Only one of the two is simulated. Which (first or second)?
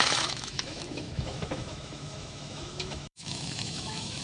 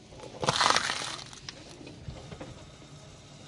first